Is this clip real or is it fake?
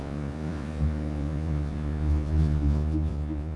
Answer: fake